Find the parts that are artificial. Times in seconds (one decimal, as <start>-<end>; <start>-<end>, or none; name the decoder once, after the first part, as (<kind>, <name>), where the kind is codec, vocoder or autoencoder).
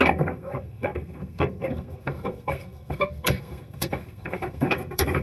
0.0-5.2 (codec, SNAC)